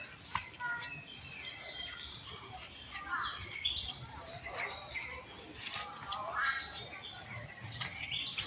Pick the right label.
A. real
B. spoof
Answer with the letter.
A